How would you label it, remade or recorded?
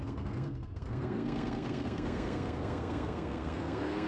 remade